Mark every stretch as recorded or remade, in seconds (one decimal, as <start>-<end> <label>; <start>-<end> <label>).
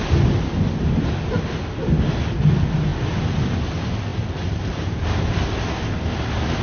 0.0-6.6 recorded